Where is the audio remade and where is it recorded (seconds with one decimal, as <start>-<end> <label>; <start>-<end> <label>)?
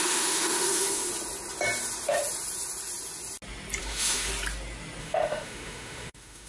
0.0-1.1 remade; 1.1-3.8 recorded; 3.8-4.3 remade; 4.3-5.0 recorded; 5.0-6.5 remade